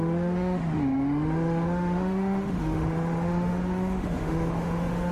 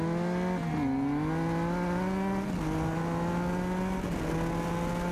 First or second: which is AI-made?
first